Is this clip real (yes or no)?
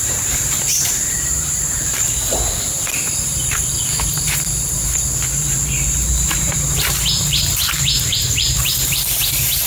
no